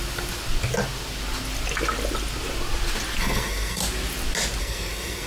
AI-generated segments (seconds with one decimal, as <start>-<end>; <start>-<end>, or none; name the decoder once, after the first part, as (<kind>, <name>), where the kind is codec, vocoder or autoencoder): 3.2-3.8 (codec, SNAC); 4.6-5.3